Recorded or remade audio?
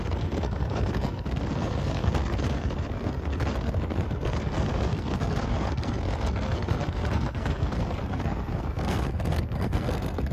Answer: remade